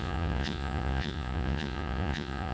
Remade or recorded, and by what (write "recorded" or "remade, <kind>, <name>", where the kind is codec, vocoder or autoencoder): remade, vocoder, Vocos